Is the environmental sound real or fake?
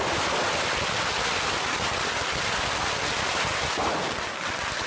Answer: real